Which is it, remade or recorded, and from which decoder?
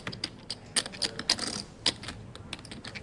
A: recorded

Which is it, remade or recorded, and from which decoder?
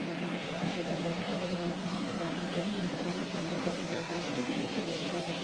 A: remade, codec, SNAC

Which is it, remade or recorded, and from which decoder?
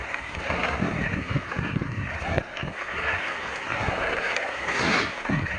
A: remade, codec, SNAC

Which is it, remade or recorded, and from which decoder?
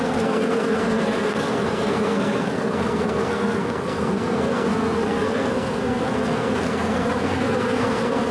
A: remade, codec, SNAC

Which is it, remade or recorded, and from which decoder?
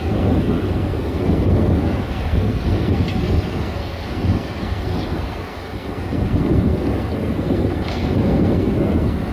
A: remade, codec, SNAC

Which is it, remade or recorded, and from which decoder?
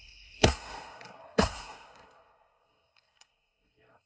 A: remade, codec, SNAC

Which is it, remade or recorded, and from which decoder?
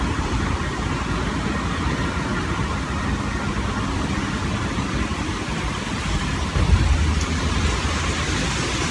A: recorded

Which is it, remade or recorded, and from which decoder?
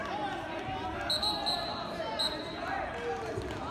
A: recorded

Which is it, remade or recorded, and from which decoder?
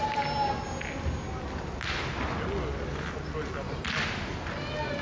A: recorded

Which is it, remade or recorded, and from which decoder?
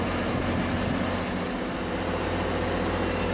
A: recorded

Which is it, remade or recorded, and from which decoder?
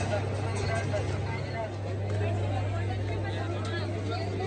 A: recorded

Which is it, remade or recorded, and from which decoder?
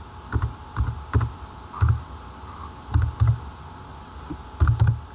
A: recorded